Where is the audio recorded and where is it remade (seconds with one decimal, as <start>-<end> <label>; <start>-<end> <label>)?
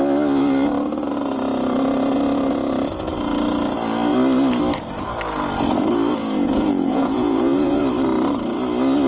0.0-6.1 recorded; 6.1-7.8 remade; 7.8-9.1 recorded